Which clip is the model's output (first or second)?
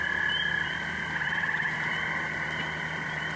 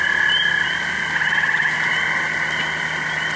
first